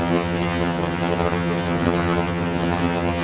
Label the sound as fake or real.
fake